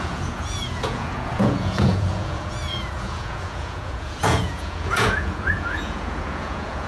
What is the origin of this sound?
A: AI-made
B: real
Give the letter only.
A